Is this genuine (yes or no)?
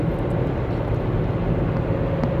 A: yes